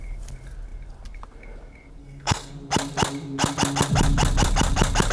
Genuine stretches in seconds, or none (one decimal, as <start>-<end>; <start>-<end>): 0.0-2.0; 2.5-5.1